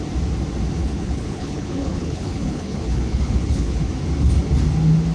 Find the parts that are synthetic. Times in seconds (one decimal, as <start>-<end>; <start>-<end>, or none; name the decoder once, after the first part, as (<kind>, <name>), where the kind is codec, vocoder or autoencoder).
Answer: 0.8-3.9 (codec, HILCodec)